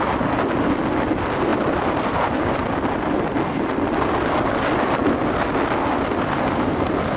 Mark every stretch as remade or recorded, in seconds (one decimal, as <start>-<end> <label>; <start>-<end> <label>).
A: 0.0-7.2 recorded